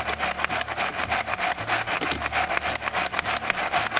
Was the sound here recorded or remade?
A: recorded